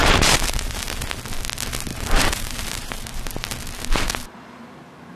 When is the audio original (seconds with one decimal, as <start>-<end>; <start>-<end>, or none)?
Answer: 0.8-1.9; 3.2-5.2